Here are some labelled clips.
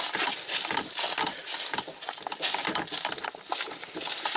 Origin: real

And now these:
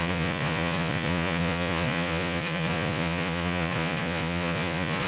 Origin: fake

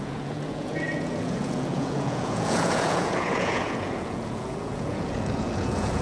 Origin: fake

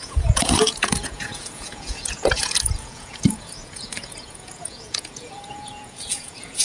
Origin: fake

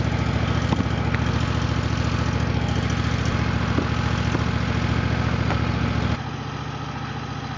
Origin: real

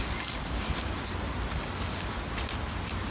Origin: real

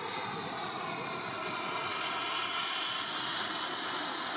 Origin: real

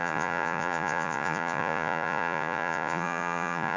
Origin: fake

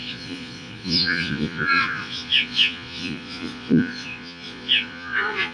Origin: fake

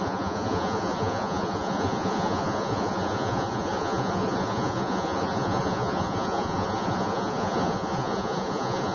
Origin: fake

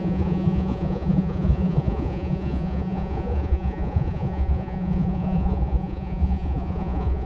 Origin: fake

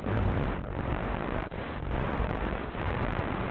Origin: fake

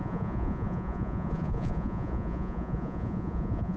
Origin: fake